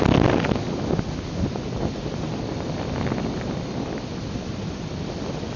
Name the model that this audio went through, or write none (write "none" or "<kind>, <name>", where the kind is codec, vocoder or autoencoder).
none